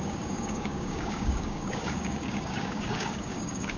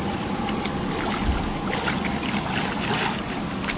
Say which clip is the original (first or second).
second